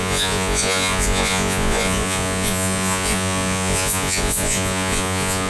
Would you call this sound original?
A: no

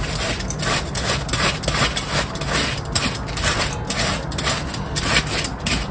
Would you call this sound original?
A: yes